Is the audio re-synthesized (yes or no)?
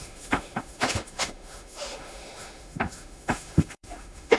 yes